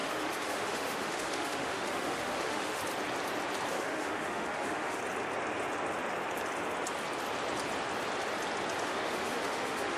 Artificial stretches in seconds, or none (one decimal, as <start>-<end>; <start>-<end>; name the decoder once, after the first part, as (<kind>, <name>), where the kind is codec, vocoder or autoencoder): 0.0-2.8 (autoencoder, DAC-VAE); 3.7-5.0; 8.8-10.0